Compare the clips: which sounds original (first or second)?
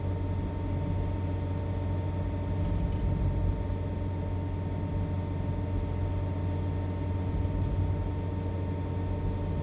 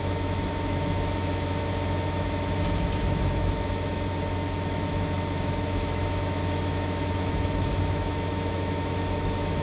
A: first